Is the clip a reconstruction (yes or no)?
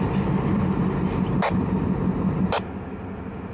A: no